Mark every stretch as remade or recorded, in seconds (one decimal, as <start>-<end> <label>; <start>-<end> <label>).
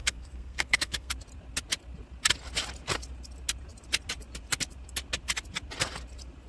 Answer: 0.0-1.1 remade; 1.1-6.5 recorded